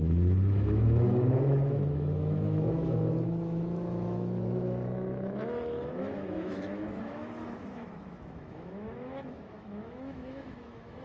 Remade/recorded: remade